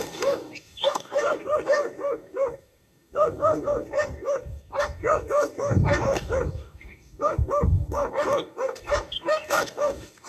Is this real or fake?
fake